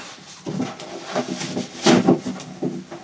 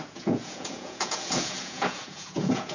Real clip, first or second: first